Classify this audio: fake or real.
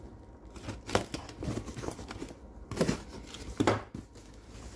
real